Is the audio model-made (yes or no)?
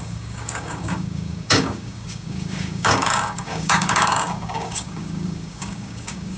yes